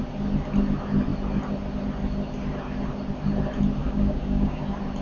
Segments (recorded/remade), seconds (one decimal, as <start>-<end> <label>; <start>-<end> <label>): 0.0-3.8 recorded; 3.8-4.6 remade; 4.6-5.0 recorded